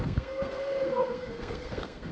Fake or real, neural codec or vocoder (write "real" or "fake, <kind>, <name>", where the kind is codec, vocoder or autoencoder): fake, codec, SNAC